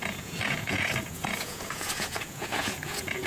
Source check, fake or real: fake